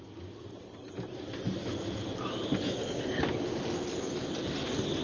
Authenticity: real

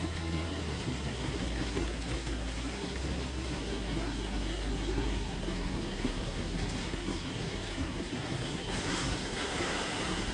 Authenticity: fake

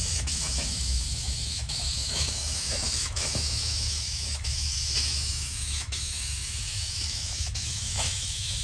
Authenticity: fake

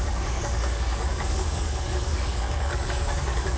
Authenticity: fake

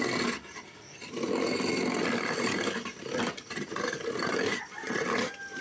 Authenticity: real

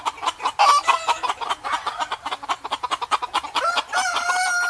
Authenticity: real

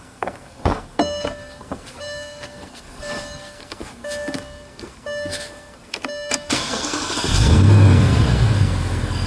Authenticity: fake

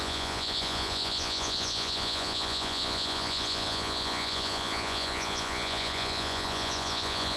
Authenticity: fake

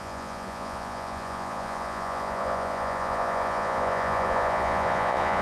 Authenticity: fake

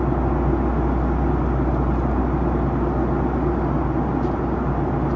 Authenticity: real